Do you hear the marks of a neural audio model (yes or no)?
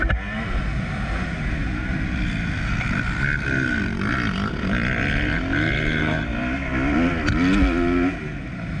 no